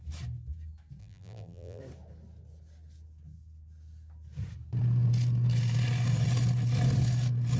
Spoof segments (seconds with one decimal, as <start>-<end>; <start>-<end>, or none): 1.0-1.8